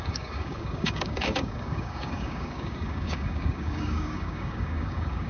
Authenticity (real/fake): fake